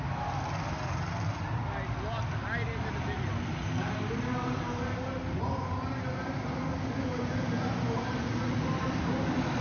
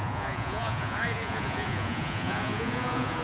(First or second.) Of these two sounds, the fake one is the second